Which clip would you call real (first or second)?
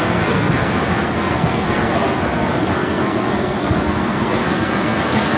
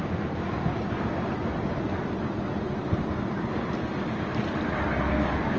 second